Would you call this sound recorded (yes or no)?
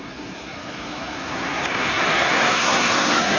no